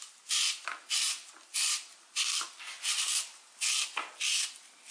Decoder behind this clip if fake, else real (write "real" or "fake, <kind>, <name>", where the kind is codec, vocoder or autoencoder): real